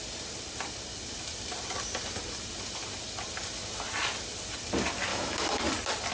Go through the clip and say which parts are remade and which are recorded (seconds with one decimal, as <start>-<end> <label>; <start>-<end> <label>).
0.0-5.1 recorded; 5.1-5.6 remade; 5.6-6.1 recorded

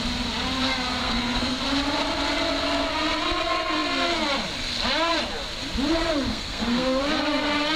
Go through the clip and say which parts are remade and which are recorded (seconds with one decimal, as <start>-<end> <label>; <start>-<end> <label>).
0.0-1.0 recorded; 1.0-1.6 remade; 1.6-6.3 recorded; 6.3-7.0 remade; 7.0-7.8 recorded

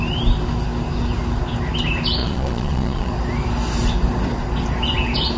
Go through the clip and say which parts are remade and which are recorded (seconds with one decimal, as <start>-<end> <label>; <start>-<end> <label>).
0.0-2.2 recorded; 2.2-3.1 remade; 3.1-5.4 recorded

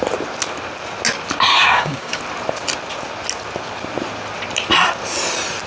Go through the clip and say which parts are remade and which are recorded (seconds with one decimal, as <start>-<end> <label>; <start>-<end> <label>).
0.0-1.5 recorded; 1.5-2.2 remade; 2.2-5.7 recorded

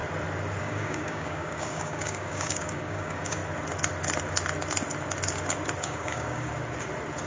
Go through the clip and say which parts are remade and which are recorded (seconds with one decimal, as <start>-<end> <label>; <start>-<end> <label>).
0.0-0.6 recorded; 0.6-3.4 remade; 3.4-5.8 recorded; 5.8-6.5 remade; 6.5-7.3 recorded

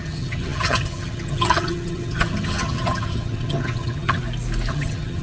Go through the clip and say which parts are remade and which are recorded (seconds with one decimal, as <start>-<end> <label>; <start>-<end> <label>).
0.0-4.2 remade; 4.2-4.7 recorded; 4.7-5.2 remade

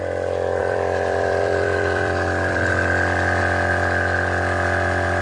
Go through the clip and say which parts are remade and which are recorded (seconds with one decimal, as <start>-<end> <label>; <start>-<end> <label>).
0.0-0.6 recorded; 0.6-3.4 remade; 3.4-5.2 recorded